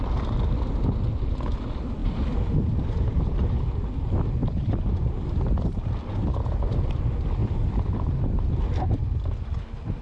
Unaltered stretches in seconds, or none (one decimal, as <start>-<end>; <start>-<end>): 0.0-2.0; 3.6-4.4; 5.9-10.0